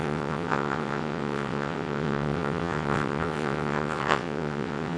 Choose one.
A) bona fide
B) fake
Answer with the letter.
B